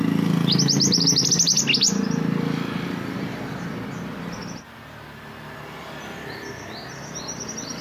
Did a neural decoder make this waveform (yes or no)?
no